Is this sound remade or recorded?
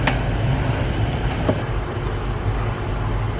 recorded